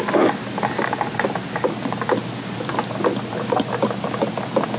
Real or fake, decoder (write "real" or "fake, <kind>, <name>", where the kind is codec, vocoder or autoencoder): real